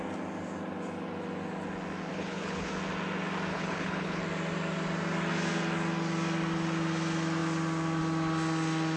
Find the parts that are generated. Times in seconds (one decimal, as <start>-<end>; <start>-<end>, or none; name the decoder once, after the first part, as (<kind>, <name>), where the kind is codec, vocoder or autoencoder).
2.1-2.7 (codec, HILCodec); 3.5-4.2